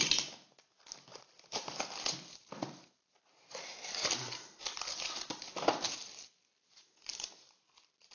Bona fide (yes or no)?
yes